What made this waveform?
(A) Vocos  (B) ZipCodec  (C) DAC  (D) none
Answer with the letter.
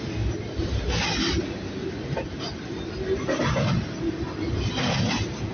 D